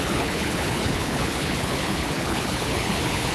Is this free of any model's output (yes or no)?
no